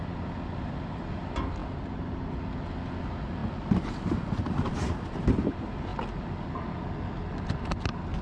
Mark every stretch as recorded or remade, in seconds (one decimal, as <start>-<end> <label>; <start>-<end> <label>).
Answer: 0.0-8.2 recorded